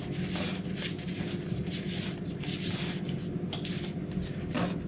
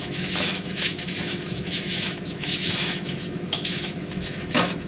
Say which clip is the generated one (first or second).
second